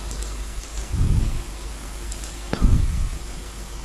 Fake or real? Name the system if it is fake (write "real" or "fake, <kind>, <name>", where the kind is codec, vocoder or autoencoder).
fake, codec, SNAC